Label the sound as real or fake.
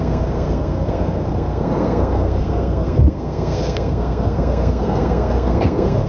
fake